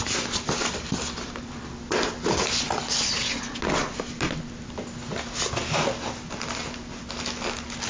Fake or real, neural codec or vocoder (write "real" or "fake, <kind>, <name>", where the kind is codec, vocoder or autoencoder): real